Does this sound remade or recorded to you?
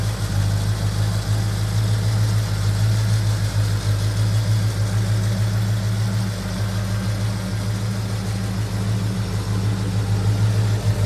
recorded